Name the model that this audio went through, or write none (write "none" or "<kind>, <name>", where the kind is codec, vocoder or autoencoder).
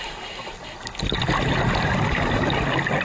none